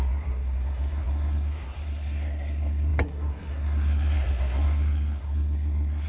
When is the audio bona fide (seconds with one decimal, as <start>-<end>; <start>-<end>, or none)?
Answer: none